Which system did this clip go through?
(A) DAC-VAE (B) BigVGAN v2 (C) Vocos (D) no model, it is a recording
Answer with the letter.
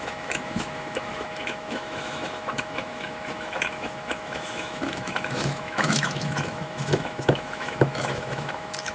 A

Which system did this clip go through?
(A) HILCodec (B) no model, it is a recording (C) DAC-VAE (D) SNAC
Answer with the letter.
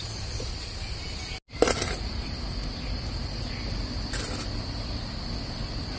B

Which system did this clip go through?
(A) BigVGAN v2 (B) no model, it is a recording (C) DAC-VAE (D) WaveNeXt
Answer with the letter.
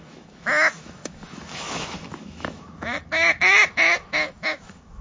C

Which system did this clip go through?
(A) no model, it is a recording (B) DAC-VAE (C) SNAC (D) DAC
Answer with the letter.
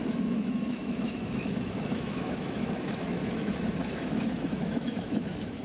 B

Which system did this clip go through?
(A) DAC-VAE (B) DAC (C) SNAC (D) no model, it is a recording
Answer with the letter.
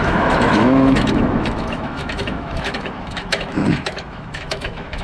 A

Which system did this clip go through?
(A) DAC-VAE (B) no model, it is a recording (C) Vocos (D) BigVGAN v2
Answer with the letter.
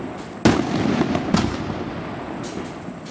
B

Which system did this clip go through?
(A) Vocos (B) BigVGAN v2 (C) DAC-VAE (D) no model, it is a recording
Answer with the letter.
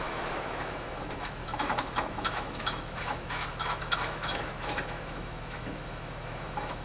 C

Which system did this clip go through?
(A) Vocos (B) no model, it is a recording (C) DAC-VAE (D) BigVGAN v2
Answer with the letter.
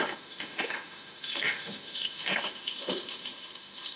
C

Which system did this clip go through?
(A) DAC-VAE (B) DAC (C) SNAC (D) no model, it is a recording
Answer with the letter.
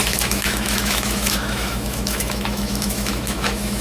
A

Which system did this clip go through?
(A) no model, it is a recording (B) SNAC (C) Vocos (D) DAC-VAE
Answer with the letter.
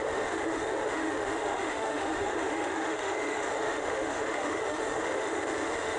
D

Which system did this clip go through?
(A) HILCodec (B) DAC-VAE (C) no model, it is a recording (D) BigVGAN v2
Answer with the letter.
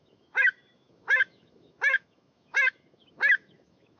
B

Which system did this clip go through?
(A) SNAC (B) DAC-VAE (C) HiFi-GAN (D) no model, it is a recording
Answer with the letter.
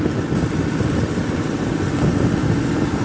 D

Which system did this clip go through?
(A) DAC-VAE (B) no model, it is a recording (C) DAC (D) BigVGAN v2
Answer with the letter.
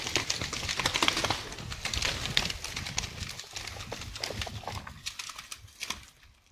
B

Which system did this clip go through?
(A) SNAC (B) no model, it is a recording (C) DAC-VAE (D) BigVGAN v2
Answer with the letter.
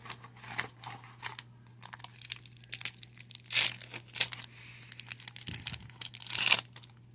B